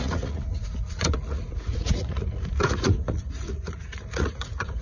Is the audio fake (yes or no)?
yes